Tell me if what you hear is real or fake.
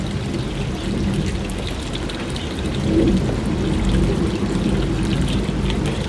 fake